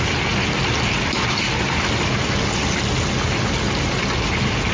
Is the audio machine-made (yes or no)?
no